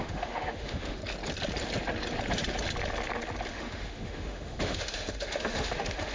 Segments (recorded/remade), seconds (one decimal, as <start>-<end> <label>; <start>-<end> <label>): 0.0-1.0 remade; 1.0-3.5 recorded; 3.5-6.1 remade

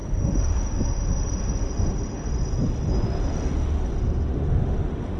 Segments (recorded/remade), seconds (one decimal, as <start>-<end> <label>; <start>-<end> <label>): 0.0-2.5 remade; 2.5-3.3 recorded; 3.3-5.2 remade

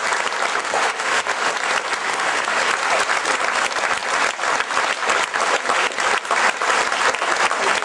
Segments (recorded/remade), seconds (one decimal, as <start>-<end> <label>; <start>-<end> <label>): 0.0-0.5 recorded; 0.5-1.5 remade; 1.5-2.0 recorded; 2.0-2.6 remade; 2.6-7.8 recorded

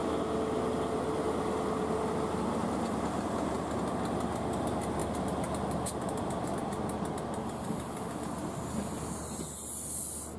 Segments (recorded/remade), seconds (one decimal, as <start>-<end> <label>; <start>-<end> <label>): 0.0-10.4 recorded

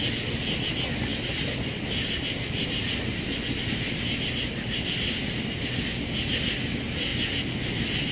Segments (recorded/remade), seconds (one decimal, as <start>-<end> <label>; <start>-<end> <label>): 0.0-8.1 recorded

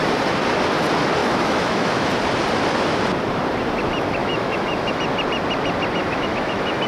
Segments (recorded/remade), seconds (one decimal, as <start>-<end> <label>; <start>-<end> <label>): 0.0-1.2 recorded; 1.2-2.1 remade; 2.1-4.2 recorded; 4.2-5.0 remade; 5.0-6.0 recorded; 6.0-6.9 remade